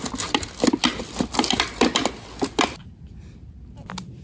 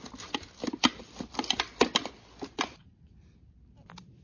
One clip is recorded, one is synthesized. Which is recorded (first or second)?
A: first